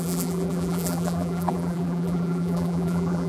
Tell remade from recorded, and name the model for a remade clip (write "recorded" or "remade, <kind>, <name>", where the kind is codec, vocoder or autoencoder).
remade, vocoder, BigVGAN v2